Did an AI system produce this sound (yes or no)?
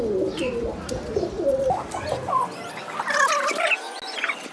no